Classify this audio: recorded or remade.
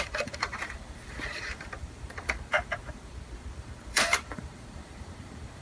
remade